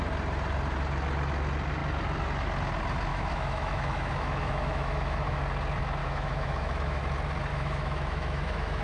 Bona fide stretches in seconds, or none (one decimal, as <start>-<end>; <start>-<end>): 0.0-3.1; 5.4-6.0; 7.0-7.5